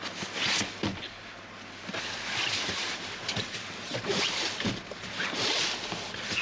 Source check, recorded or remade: recorded